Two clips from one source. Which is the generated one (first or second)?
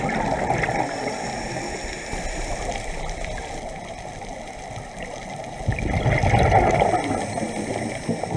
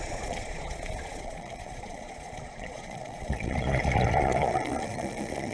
second